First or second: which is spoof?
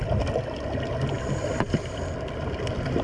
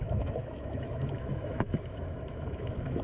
second